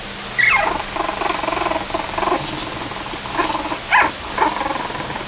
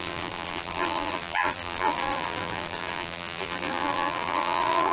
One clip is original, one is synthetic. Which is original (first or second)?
first